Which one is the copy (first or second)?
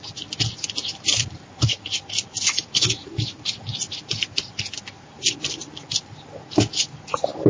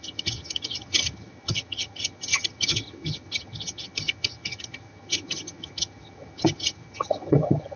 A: second